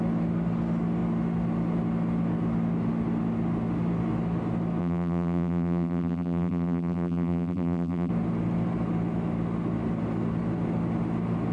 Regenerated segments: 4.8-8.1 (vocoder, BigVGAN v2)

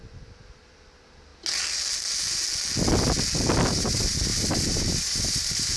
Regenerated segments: 0.0-1.3 (vocoder, BigVGAN v2); 3.7-5.8